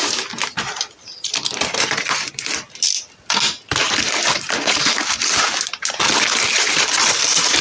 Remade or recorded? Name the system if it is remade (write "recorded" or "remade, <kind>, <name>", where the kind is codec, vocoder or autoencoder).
recorded